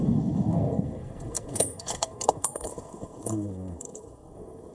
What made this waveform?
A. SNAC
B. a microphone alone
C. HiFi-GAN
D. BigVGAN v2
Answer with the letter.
A